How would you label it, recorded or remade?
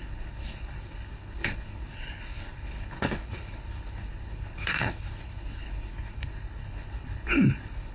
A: remade